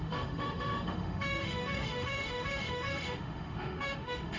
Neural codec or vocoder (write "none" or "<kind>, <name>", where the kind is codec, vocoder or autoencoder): autoencoder, DAC-VAE